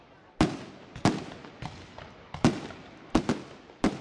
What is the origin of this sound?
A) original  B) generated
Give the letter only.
A